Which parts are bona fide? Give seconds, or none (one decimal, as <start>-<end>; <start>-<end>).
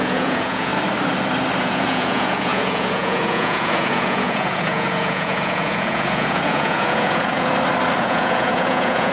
0.7-1.6; 7.5-8.0